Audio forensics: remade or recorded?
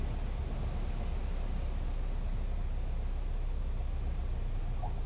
recorded